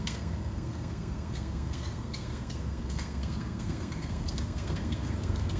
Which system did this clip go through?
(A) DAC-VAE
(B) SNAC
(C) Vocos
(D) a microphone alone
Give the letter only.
B